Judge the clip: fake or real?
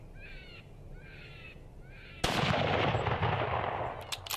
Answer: real